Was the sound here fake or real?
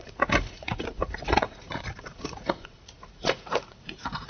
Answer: fake